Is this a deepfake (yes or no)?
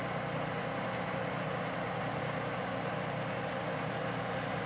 no